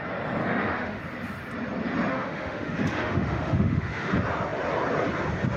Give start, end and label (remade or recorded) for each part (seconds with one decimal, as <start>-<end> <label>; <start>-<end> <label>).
0.0-0.4 recorded; 0.4-1.0 remade; 1.0-2.1 recorded; 2.1-4.1 remade; 4.1-5.6 recorded